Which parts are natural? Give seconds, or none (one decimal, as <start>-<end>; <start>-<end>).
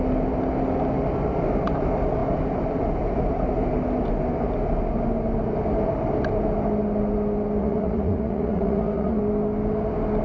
0.0-7.6; 9.2-10.2